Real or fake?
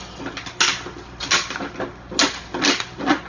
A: real